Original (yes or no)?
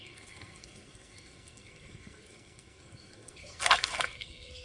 no